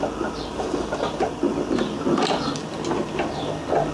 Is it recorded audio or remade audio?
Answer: recorded